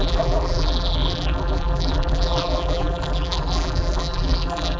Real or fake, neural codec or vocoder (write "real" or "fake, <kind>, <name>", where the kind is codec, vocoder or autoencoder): fake, vocoder, BigVGAN v2